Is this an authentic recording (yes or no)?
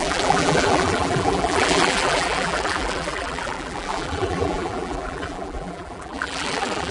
no